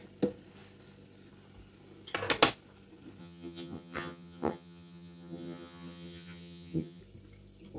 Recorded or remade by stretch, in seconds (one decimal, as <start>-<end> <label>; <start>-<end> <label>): 0.0-3.2 recorded; 3.2-7.0 remade; 7.0-7.8 recorded